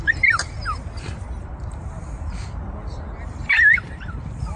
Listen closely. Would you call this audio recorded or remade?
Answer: remade